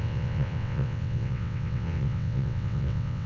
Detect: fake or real fake